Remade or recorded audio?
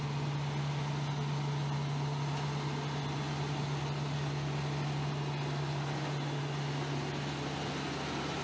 recorded